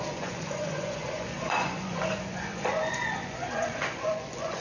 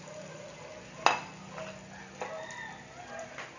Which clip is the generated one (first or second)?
first